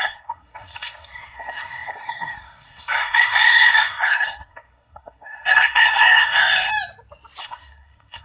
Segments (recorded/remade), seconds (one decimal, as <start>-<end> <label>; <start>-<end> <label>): 0.0-6.7 remade; 6.7-7.4 recorded; 7.4-8.2 remade